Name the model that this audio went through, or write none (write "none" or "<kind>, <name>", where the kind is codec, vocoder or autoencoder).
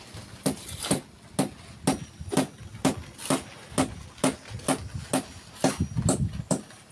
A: none